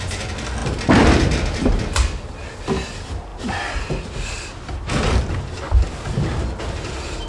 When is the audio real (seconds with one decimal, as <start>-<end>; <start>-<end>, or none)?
0.0-7.3